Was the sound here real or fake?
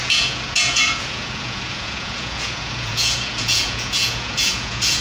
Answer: fake